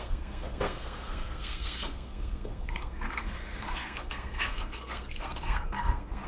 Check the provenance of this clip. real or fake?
fake